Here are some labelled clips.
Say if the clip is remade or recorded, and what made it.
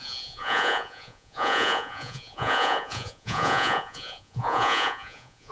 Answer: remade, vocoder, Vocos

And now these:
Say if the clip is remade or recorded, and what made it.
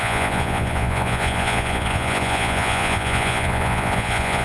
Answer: remade, vocoder, Vocos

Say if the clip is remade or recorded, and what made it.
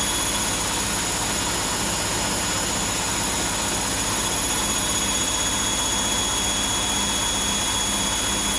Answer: recorded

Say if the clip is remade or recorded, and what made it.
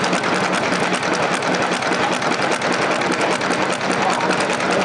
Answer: recorded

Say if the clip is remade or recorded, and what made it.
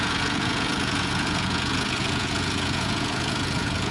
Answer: remade, vocoder, Vocos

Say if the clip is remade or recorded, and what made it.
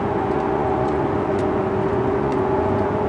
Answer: remade, vocoder, Vocos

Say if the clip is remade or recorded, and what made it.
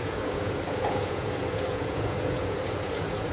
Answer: remade, vocoder, Vocos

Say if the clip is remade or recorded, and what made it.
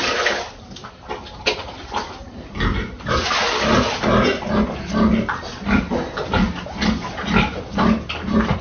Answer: recorded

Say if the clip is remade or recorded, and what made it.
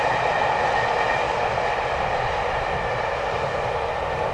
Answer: recorded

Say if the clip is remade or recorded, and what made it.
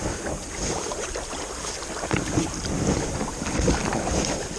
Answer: recorded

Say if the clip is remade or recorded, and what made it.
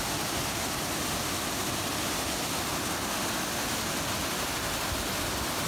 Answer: recorded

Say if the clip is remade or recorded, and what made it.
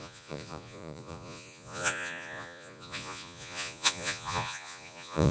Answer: remade, vocoder, Vocos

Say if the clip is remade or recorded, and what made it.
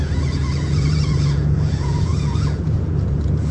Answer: remade, vocoder, Vocos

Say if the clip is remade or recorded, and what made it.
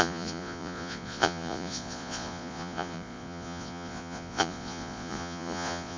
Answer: remade, vocoder, Vocos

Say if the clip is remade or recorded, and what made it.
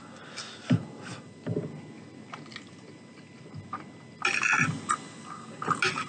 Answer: recorded